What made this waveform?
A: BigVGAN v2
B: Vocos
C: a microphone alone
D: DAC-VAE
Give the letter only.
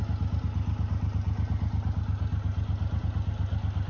C